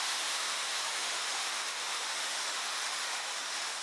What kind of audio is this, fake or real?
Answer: fake